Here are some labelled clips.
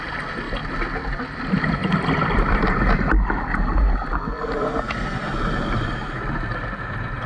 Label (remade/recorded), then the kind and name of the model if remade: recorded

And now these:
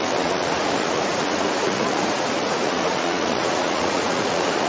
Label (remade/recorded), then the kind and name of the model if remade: remade, vocoder, Vocos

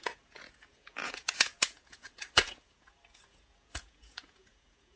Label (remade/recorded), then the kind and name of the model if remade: remade, vocoder, Vocos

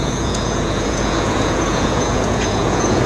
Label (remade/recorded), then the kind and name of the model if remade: remade, vocoder, Vocos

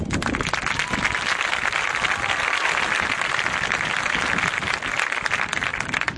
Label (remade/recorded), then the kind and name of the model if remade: recorded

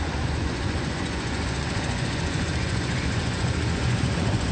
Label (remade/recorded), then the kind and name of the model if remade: remade, vocoder, Vocos